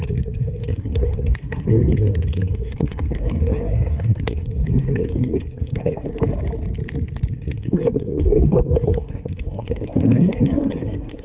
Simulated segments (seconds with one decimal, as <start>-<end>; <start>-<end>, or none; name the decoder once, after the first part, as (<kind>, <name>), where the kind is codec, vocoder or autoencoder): 0.0-6.1 (codec, SNAC); 7.3-11.2